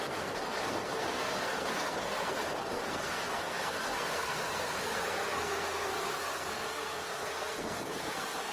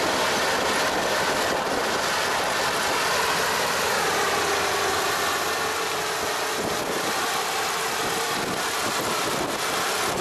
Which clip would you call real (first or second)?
second